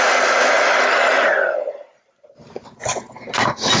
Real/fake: real